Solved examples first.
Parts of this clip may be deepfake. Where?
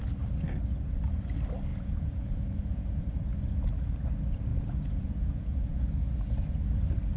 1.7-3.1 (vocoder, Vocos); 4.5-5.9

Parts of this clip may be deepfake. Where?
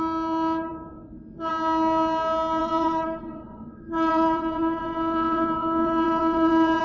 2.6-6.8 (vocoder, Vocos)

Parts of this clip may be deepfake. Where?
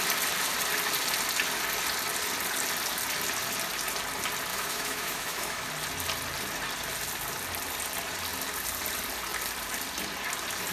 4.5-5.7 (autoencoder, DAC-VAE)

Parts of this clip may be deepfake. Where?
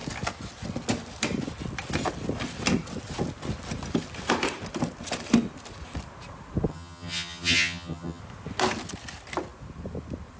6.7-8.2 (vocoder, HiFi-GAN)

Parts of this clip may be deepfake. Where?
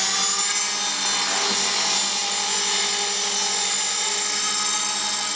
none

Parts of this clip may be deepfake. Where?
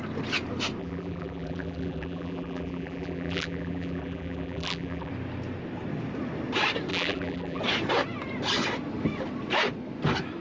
0.8-5.1 (vocoder, BigVGAN v2); 6.9-7.6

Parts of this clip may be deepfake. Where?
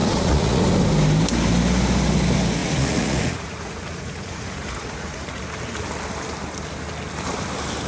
0.0-0.6 (vocoder, Vocos); 2.6-5.4